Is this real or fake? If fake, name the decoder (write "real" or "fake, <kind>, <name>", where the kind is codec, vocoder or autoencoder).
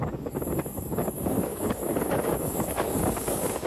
fake, codec, DAC